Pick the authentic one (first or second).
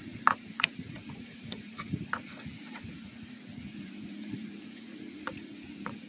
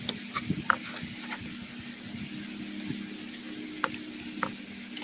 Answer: second